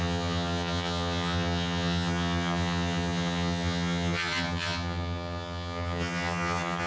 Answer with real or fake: fake